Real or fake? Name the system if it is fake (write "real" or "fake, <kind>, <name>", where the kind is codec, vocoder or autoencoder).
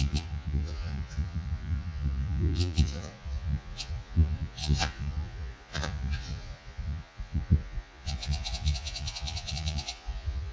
fake, vocoder, Vocos